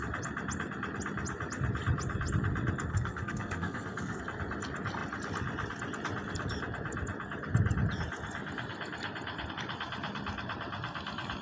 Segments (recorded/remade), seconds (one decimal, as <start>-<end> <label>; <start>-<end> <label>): 0.0-2.9 recorded; 2.9-4.2 remade; 4.2-11.4 recorded